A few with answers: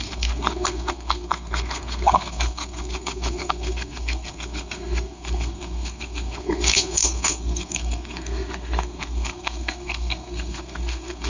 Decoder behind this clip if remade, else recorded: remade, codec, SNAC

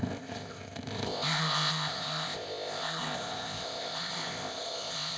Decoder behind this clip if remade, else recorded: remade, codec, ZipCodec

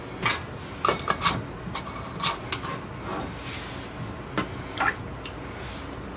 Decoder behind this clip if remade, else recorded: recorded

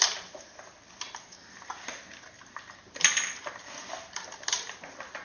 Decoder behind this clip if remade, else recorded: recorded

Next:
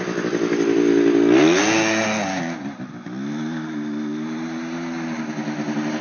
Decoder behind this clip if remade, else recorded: recorded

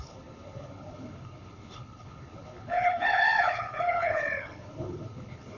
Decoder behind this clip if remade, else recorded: remade, codec, HILCodec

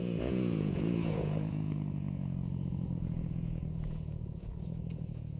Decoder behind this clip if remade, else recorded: remade, vocoder, Vocos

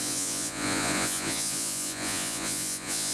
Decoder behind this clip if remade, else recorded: remade, vocoder, Vocos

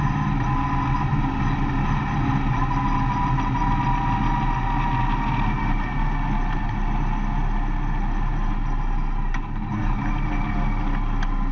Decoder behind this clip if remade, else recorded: recorded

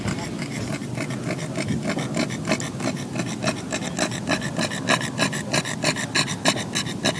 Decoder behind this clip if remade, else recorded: recorded